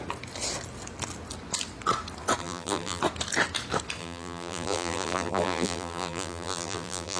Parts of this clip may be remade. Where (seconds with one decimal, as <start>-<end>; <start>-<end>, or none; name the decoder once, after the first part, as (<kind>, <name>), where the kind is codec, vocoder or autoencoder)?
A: 2.4-3.0 (vocoder, BigVGAN v2); 4.0-7.2